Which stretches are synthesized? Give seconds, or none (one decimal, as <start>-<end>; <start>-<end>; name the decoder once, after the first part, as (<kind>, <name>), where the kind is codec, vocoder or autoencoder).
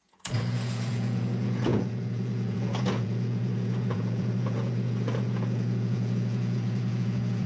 0.0-7.5 (vocoder, Vocos)